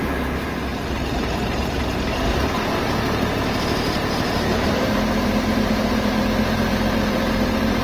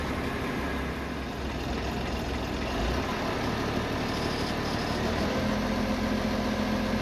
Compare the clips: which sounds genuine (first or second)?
second